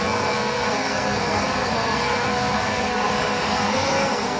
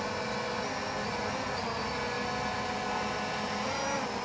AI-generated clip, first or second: first